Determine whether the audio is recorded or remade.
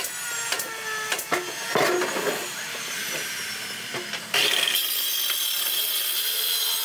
recorded